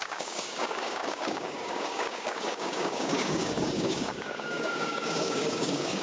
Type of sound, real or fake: fake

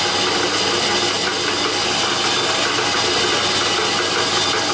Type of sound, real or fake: real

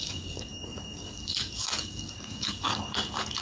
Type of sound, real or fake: fake